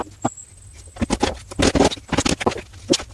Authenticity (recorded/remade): recorded